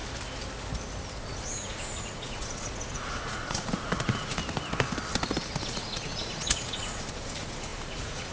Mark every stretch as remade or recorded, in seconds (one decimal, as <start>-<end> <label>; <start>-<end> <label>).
0.0-1.2 recorded; 1.2-4.4 remade; 4.4-5.6 recorded; 5.6-8.3 remade